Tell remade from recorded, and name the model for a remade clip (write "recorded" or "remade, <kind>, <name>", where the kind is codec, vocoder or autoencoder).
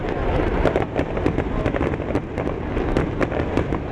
recorded